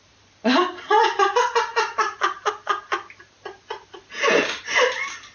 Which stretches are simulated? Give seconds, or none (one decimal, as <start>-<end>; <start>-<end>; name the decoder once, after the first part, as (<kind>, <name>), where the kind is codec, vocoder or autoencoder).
none